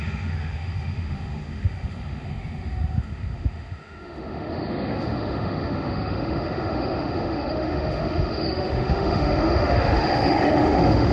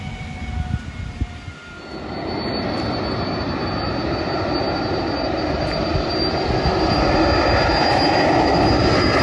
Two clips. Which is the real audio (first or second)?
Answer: second